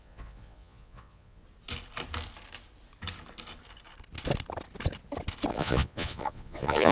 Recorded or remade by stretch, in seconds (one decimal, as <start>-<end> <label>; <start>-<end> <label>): 0.0-1.4 remade; 1.4-5.5 recorded; 5.5-6.9 remade